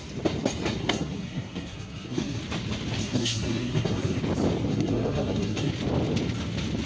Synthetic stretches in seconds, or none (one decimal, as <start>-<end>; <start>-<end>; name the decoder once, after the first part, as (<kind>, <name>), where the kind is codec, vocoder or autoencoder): 0.8-2.4 (codec, SNAC); 3.0-4.2; 4.7-5.7